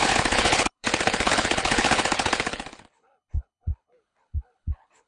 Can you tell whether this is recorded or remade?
remade